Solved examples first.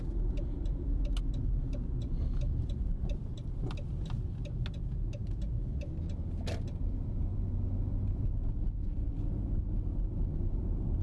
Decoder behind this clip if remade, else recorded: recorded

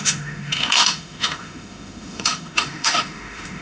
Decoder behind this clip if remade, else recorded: remade, autoencoder, DAC-VAE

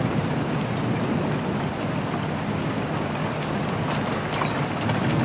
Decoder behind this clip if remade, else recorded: recorded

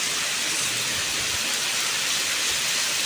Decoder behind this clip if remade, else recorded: recorded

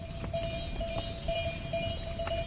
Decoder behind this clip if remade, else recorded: recorded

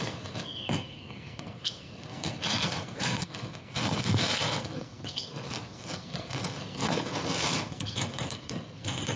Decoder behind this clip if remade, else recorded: remade, codec, SNAC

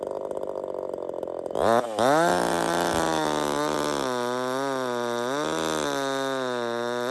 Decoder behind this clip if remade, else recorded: recorded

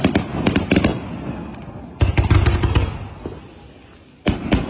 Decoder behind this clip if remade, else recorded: recorded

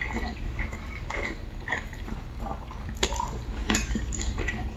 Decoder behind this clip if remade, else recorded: remade, codec, DAC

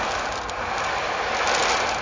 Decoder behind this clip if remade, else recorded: recorded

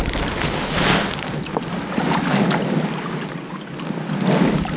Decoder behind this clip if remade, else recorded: recorded